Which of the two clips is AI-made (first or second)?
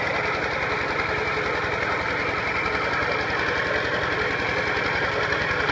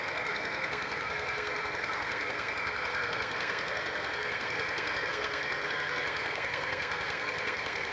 second